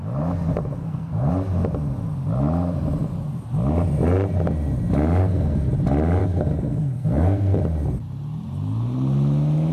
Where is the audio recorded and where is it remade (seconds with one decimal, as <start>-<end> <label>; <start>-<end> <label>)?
0.0-0.8 recorded; 0.8-1.3 remade; 1.3-5.2 recorded; 5.2-5.7 remade; 5.7-6.2 recorded; 6.2-7.6 remade; 7.6-9.7 recorded